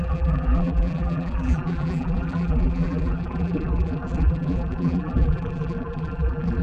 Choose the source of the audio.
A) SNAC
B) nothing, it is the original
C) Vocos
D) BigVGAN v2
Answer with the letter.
D